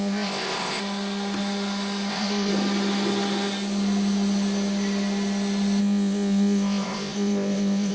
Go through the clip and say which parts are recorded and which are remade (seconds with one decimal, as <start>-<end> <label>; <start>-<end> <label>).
0.0-0.8 remade; 0.8-2.1 recorded; 2.1-2.5 remade; 2.5-5.8 recorded; 5.8-7.9 remade